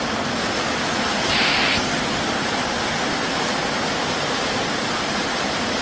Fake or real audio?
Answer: real